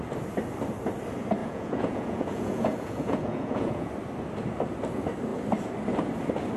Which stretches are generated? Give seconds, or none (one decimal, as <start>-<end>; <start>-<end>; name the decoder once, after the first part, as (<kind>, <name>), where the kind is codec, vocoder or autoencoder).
1.4-3.9 (vocoder, Vocos)